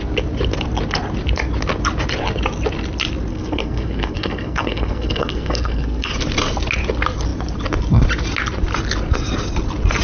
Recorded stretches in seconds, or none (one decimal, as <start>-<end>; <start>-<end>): 0.0-3.3; 6.1-10.0